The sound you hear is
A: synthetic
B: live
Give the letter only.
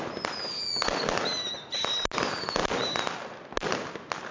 B